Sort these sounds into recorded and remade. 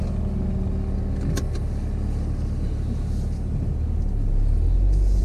recorded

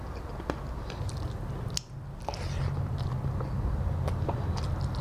recorded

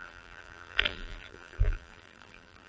remade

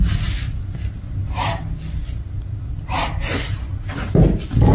recorded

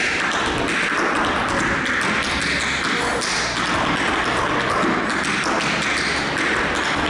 recorded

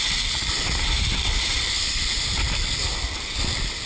recorded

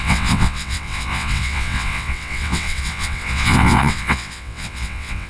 remade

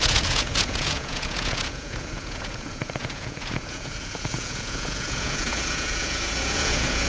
remade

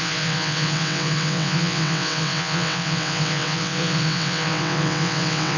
remade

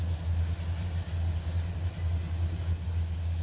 recorded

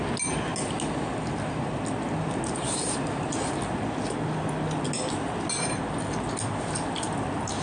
recorded